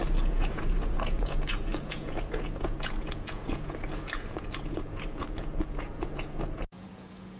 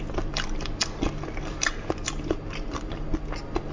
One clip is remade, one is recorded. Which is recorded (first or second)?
second